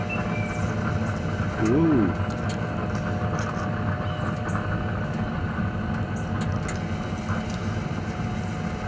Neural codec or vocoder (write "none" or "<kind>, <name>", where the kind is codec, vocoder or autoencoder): none